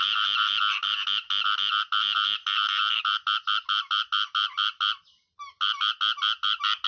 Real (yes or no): yes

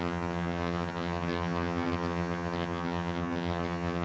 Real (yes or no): no